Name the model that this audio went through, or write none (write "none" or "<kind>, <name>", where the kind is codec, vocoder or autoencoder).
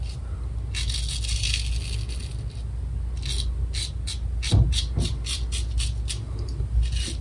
none